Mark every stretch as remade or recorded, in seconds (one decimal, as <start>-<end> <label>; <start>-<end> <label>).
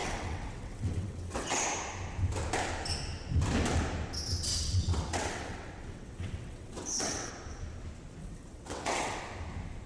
0.0-1.6 remade; 1.6-4.5 recorded; 4.5-7.3 remade; 7.3-8.2 recorded; 8.2-9.2 remade; 9.2-9.9 recorded